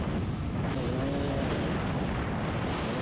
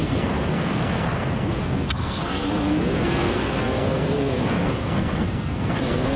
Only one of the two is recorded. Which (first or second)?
first